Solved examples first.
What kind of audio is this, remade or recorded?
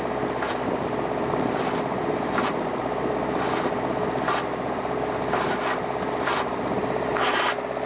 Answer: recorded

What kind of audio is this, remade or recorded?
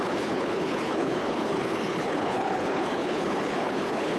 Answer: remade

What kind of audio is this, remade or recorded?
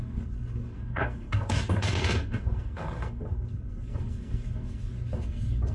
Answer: remade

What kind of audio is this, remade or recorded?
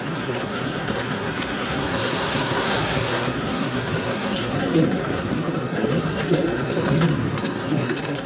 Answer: remade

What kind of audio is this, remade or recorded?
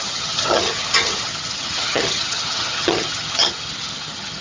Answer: remade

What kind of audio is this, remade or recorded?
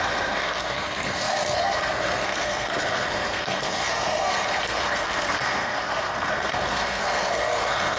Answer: remade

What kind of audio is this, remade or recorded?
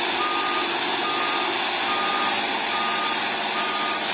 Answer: recorded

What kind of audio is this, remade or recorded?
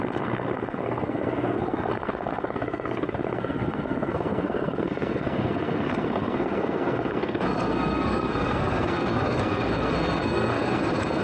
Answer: remade